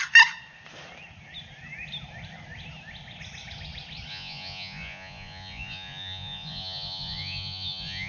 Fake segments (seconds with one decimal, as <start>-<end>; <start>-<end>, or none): 4.1-8.1